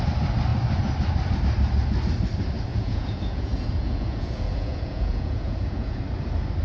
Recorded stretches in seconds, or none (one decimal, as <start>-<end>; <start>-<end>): 0.0-2.7; 6.0-6.6